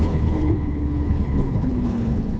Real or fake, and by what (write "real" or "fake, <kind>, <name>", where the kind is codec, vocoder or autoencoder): fake, codec, HILCodec